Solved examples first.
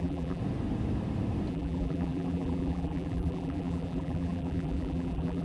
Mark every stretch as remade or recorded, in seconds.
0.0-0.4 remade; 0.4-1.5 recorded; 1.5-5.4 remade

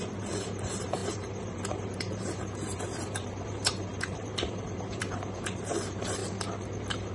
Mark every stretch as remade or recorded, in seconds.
0.0-6.2 remade; 6.2-7.1 recorded

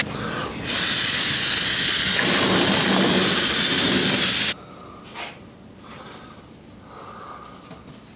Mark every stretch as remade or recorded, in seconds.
0.0-8.2 recorded

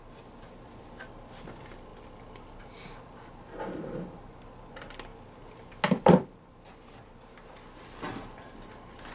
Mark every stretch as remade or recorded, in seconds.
0.0-9.1 recorded

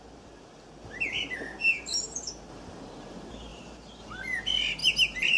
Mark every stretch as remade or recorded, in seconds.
0.0-1.6 recorded; 1.6-2.3 remade; 2.3-3.5 recorded; 3.5-4.1 remade; 4.1-4.8 recorded; 4.8-5.4 remade